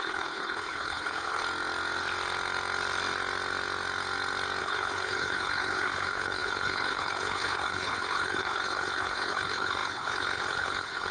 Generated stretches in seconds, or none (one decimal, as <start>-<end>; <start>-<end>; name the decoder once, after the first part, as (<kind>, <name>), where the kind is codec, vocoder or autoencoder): 0.0-1.4 (codec, HILCodec); 4.6-11.1